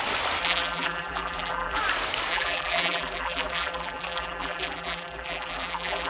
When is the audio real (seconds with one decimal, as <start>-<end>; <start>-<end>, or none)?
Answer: 0.0-0.4; 1.8-2.3